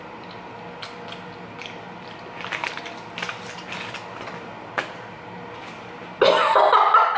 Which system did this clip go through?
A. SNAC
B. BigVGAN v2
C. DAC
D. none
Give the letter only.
D